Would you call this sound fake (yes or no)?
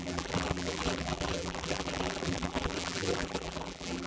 yes